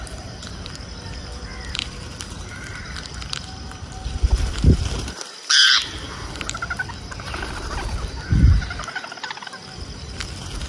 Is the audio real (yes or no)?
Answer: no